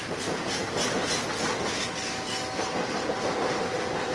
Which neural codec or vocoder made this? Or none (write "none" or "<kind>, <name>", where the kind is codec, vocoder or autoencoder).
none